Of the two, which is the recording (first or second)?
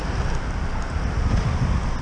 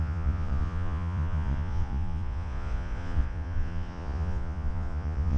first